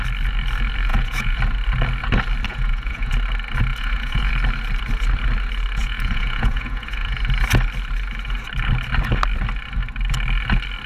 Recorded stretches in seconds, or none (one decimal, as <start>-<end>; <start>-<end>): 0.0-0.9; 1.4-2.5; 3.1-3.7; 4.3-5.8; 7.2-10.9